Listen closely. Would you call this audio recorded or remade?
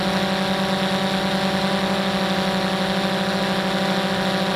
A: recorded